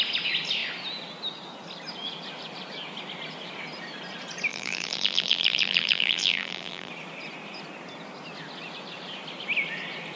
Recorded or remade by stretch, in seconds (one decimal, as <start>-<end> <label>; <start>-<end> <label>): 0.0-4.5 recorded; 4.5-6.9 remade; 6.9-10.2 recorded